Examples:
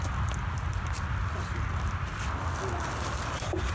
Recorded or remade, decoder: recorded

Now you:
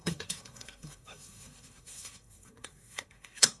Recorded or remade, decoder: remade, codec, SNAC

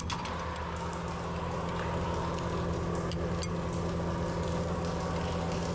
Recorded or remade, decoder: recorded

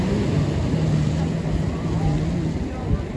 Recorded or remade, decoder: recorded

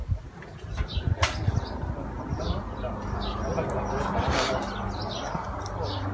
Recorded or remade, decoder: recorded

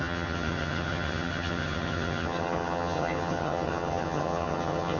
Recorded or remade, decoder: remade, vocoder, HiFi-GAN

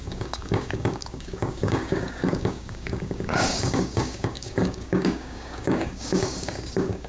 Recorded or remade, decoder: remade, codec, DAC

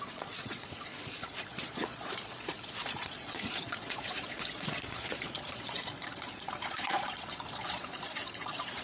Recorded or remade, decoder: remade, vocoder, Vocos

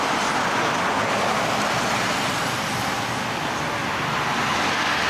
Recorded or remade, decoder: recorded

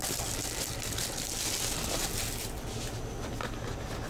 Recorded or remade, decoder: recorded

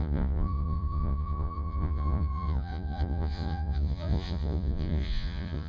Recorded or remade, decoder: remade, vocoder, Vocos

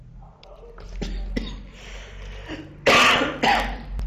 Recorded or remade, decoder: recorded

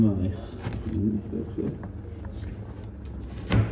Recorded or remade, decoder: recorded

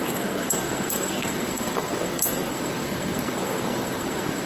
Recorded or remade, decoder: remade, codec, SNAC